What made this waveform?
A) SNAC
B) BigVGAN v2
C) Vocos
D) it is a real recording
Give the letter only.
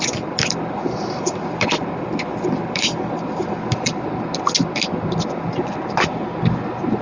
D